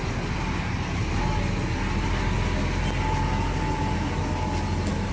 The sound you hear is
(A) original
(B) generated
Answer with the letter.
A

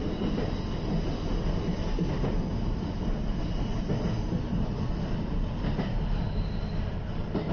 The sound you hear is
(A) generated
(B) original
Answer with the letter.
B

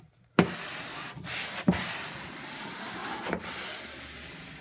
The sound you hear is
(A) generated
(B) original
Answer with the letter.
B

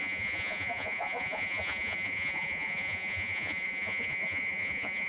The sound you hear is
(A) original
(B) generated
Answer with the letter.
B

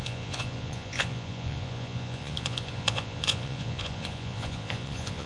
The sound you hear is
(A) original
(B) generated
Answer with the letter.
B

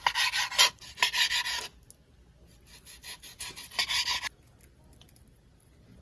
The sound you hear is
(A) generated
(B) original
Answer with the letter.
B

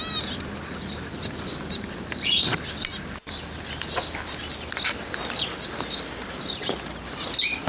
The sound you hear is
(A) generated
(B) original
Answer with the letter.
B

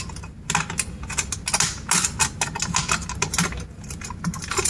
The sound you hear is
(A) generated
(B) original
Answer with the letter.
B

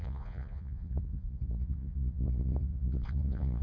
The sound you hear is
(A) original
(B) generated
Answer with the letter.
B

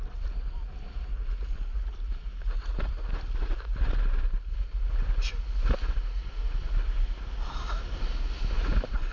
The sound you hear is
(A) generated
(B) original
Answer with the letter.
B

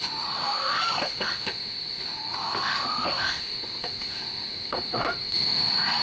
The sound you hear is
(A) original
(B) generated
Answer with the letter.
B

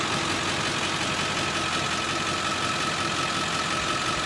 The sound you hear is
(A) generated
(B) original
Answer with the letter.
B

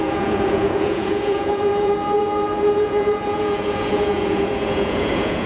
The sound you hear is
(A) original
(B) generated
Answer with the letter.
B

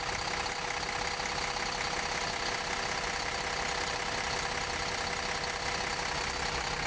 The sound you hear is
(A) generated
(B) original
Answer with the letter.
B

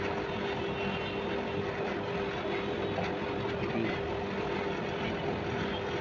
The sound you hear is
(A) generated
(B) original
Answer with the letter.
B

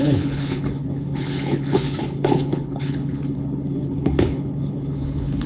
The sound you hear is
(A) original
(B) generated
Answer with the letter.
B